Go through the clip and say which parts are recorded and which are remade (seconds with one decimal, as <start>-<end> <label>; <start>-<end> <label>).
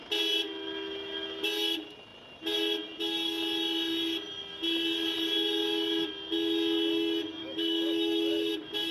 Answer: 0.0-7.4 recorded; 7.4-8.5 remade; 8.5-8.9 recorded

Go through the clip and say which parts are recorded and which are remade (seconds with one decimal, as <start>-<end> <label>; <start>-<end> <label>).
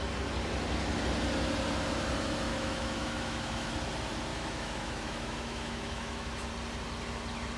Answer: 0.0-2.5 recorded; 2.5-3.7 remade; 3.7-4.3 recorded; 4.3-6.5 remade; 6.5-7.6 recorded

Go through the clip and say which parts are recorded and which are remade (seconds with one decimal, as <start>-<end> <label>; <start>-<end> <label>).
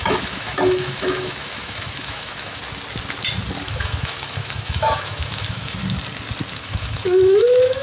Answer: 0.0-2.6 remade; 2.6-3.6 recorded; 3.6-5.8 remade; 5.8-6.6 recorded; 6.6-7.8 remade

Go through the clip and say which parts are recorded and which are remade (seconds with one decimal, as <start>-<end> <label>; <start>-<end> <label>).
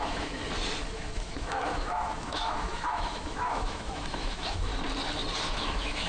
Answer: 0.0-0.4 remade; 0.4-0.9 recorded; 0.9-4.7 remade; 4.7-5.4 recorded; 5.4-6.1 remade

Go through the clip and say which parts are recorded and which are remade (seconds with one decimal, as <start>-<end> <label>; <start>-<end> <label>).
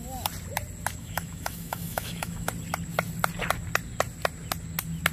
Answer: 0.0-1.0 recorded; 1.0-2.5 remade; 2.5-5.1 recorded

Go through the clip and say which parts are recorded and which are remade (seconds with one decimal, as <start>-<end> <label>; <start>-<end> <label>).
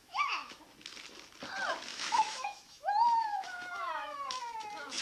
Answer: 0.0-0.6 remade; 0.6-1.9 recorded; 1.9-5.0 remade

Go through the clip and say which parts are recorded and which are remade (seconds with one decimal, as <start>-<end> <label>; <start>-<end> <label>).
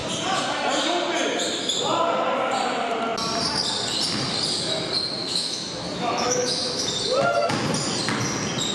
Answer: 0.0-5.2 recorded; 5.2-6.8 remade; 6.8-8.7 recorded